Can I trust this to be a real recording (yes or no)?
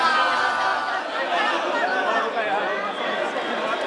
yes